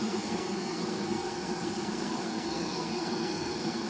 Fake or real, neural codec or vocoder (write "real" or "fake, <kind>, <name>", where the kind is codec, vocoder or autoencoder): fake, codec, SNAC